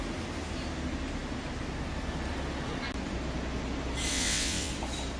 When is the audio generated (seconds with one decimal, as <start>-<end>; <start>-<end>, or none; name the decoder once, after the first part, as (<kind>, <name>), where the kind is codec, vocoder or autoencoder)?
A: 4.1-4.7 (vocoder, WaveNeXt)